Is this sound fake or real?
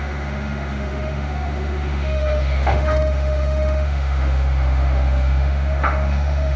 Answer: fake